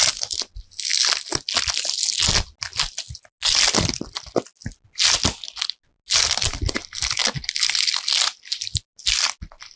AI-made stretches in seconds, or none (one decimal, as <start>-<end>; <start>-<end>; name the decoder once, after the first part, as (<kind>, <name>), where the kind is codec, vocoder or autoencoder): none